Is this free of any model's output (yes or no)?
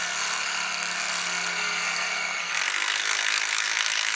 no